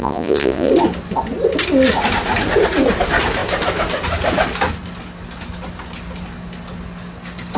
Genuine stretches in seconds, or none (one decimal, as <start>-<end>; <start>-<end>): 0.7-7.6